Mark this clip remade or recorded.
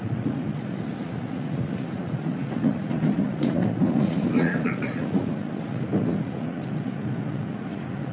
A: remade